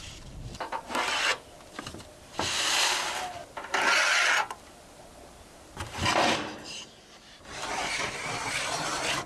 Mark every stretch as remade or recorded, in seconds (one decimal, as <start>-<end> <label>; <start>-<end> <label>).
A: 0.0-1.3 remade; 1.3-5.4 recorded; 5.4-9.3 remade